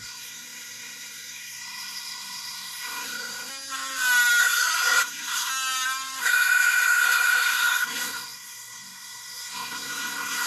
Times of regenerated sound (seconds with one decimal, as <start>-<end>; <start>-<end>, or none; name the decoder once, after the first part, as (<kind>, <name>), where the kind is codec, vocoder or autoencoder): 0.0-3.5 (codec, SNAC); 4.4-5.5; 6.2-10.5